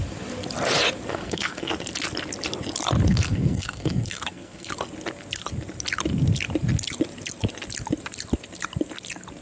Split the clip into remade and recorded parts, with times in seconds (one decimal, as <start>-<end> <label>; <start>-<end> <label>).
0.0-1.1 recorded; 1.1-1.7 remade; 1.7-3.1 recorded; 3.1-4.7 remade; 4.7-9.4 recorded